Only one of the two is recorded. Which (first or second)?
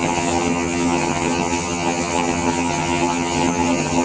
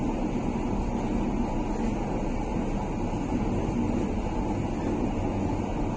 second